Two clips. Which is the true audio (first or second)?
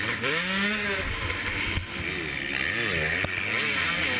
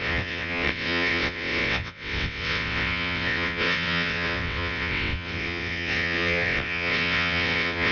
first